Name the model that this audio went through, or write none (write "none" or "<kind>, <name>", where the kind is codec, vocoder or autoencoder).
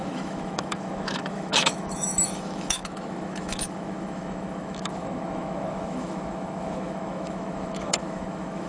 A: autoencoder, DAC-VAE